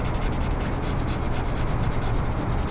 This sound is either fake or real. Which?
real